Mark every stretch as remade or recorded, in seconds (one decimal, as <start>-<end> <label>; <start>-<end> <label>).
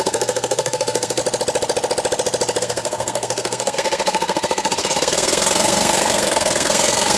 0.0-1.2 remade; 1.2-2.6 recorded; 2.6-7.2 remade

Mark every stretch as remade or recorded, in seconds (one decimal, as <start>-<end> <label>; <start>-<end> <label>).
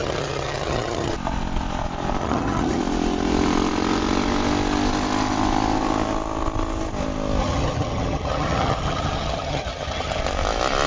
0.0-1.1 remade; 1.1-2.2 recorded; 2.2-2.8 remade; 2.8-7.4 recorded; 7.4-10.2 remade; 10.2-10.9 recorded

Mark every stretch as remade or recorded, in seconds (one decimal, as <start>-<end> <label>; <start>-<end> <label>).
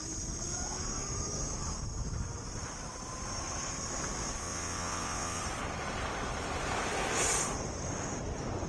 0.0-4.4 recorded; 4.4-5.4 remade; 5.4-8.7 recorded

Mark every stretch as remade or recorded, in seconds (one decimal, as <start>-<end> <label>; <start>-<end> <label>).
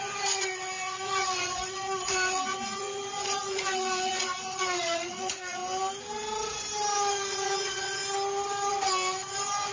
0.0-5.6 remade; 5.6-7.1 recorded; 7.1-8.0 remade; 8.0-8.7 recorded; 8.7-9.7 remade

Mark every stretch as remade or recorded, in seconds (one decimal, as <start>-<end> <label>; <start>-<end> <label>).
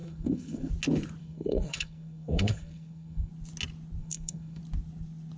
0.0-0.7 remade; 0.7-1.2 recorded; 1.2-3.3 remade; 3.3-4.0 recorded; 4.0-4.6 remade; 4.6-5.4 recorded